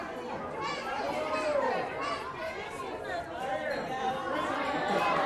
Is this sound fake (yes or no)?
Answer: yes